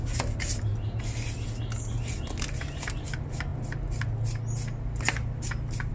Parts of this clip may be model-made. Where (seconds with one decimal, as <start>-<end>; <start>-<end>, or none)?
none